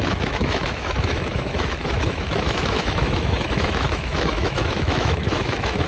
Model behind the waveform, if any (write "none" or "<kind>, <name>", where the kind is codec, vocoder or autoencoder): autoencoder, DAC-VAE